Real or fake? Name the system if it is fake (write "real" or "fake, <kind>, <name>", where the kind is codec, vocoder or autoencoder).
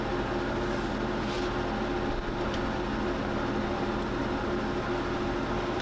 real